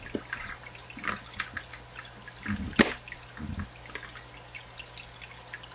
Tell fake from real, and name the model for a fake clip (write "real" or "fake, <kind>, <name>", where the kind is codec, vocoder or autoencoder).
real